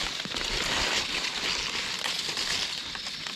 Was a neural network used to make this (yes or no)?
no